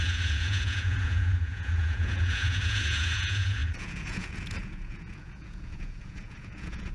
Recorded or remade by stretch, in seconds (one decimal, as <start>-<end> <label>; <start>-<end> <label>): 0.0-6.9 remade